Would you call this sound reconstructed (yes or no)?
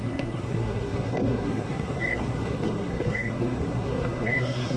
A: yes